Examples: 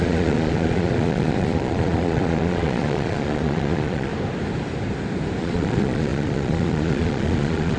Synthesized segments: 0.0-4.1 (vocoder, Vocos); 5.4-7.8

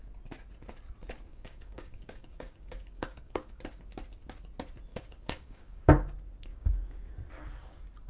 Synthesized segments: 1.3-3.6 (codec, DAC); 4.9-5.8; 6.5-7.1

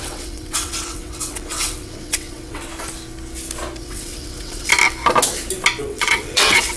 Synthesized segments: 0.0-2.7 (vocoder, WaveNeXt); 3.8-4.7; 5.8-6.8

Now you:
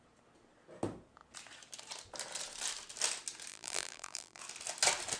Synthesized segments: 3.5-4.4 (vocoder, BigVGAN v2)

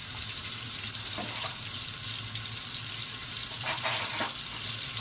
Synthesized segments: 0.0-2.0 (vocoder, BigVGAN v2); 3.2-4.1

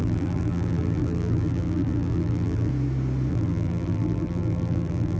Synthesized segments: 0.0-2.7 (vocoder, BigVGAN v2); 3.3-5.2

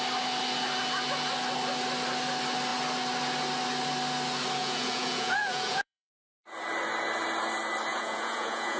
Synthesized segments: 4.6-6.1 (vocoder, Vocos); 7.9-8.8

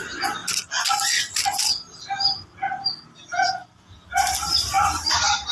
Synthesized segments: none